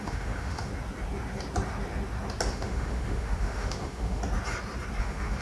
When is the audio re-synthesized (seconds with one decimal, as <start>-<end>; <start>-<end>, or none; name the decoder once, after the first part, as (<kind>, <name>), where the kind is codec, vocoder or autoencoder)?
0.0-0.7 (autoencoder, DAC-VAE); 2.5-4.2; 5.0-5.4